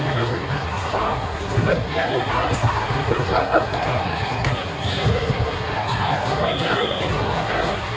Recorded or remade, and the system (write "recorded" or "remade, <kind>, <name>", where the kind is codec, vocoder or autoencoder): remade, codec, SNAC